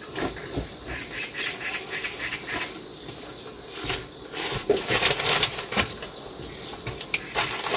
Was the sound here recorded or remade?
recorded